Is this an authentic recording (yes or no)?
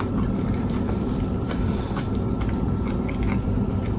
no